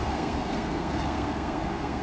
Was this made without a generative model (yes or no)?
no